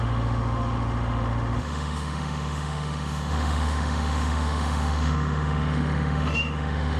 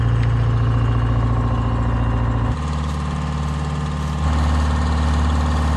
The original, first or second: second